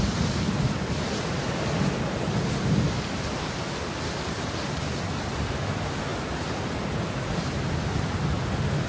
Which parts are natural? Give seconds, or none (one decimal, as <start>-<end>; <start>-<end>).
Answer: 0.0-8.9